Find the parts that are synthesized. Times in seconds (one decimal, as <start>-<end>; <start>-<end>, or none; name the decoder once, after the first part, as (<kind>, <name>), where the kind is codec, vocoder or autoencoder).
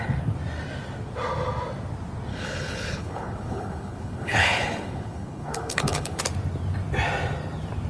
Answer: 2.3-6.2 (codec, HILCodec)